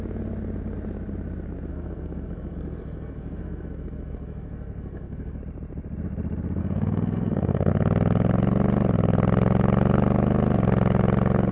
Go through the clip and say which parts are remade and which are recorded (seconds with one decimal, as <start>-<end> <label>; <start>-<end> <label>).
0.0-1.7 recorded; 1.7-5.4 remade; 5.4-6.6 recorded; 6.6-7.7 remade; 7.7-11.5 recorded